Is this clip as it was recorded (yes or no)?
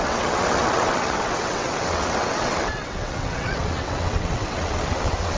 no